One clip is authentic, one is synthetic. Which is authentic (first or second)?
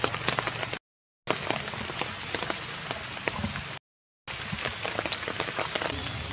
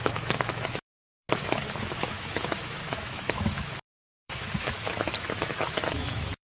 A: first